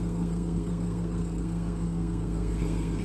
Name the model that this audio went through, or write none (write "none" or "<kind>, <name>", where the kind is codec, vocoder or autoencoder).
codec, SNAC